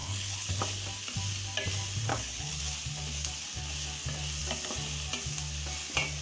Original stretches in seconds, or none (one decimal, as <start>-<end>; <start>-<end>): 0.6-2.1; 2.6-6.2